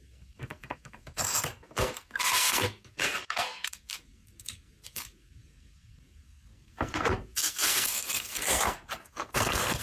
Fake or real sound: fake